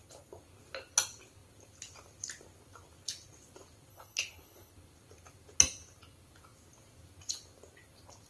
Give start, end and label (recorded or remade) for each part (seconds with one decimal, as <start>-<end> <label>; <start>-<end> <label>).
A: 0.0-3.9 recorded; 3.9-4.7 remade; 4.7-8.3 recorded